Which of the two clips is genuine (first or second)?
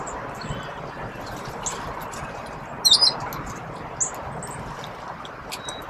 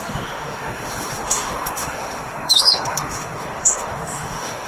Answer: first